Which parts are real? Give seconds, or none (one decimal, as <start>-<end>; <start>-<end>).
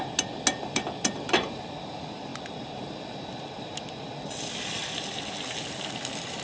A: 0.0-6.4